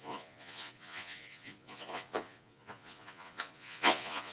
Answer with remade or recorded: remade